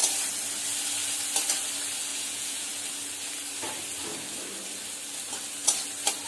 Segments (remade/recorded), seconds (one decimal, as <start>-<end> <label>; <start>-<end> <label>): 0.0-2.1 recorded; 2.1-2.7 remade; 2.7-6.3 recorded